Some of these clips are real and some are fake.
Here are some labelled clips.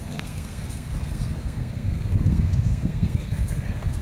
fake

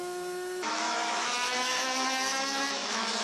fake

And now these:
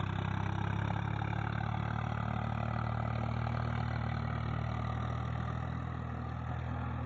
real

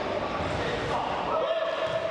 fake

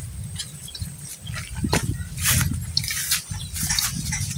real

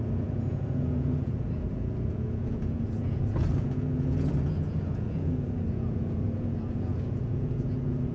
fake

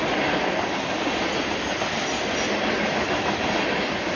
real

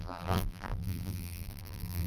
fake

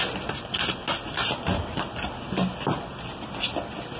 real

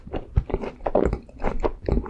real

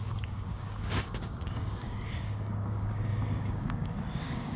fake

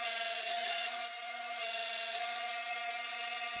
fake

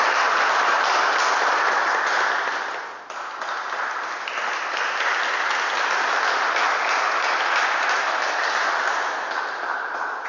real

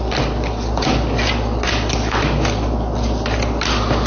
real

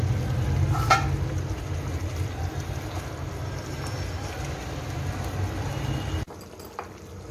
real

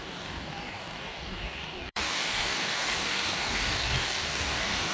fake